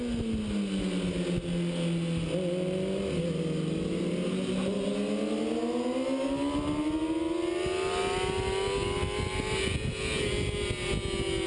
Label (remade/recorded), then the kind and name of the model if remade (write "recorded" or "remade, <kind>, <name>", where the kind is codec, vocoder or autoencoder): recorded